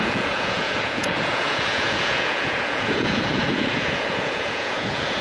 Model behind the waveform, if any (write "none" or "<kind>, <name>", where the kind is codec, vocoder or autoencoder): vocoder, Vocos